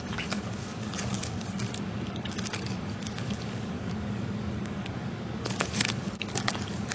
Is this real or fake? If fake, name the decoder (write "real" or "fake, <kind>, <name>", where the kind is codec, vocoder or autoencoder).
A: fake, codec, DAC